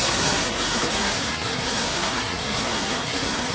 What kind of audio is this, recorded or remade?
remade